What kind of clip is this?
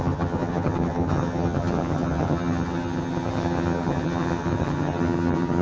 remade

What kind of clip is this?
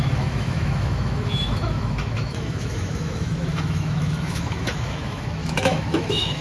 remade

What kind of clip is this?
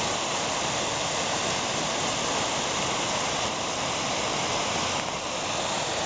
recorded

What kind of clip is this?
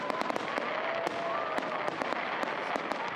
remade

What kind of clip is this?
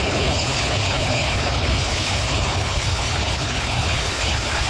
remade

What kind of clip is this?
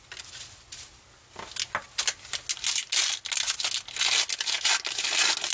recorded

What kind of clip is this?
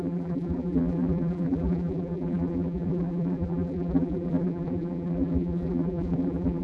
remade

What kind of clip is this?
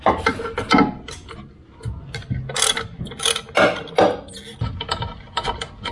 recorded